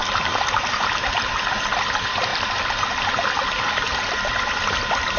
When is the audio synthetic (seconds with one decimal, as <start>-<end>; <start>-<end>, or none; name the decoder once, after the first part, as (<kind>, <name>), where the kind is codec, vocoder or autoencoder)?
none